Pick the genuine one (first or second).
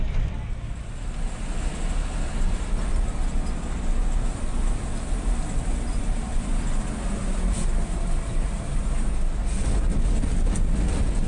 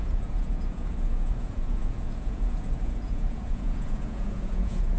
first